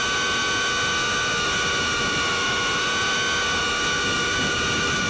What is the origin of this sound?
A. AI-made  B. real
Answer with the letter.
B